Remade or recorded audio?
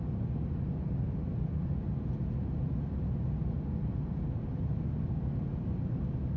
recorded